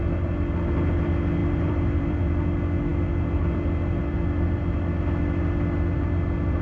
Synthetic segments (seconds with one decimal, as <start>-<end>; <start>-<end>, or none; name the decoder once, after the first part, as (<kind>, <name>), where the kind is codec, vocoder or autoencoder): 1.4-2.2 (vocoder, BigVGAN v2)